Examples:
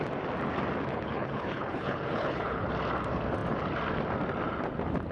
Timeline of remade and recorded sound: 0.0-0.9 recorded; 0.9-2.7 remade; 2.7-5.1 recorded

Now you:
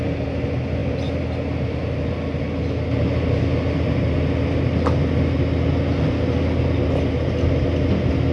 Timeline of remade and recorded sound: 0.0-8.3 recorded

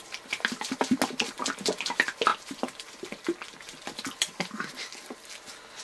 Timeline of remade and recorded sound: 0.0-5.8 recorded

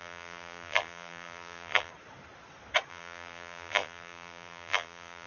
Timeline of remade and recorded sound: 0.0-1.9 remade; 1.9-2.9 recorded; 2.9-5.3 remade

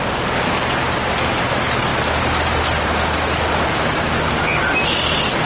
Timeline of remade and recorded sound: 0.0-5.5 recorded

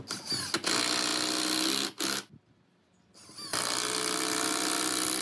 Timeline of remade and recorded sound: 0.0-5.2 recorded

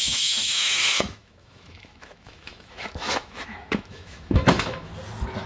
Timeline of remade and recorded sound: 0.0-4.9 remade; 4.9-5.5 recorded

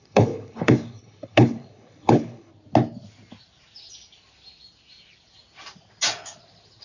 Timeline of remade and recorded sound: 0.0-2.5 remade; 2.5-6.8 recorded